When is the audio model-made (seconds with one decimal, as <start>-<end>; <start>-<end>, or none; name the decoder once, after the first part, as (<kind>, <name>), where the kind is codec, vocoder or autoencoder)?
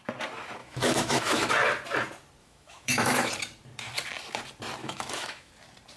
0.6-1.5 (autoencoder, DAC-VAE); 2.4-3.3; 4.8-5.5